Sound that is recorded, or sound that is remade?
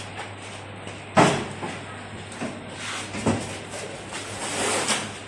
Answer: recorded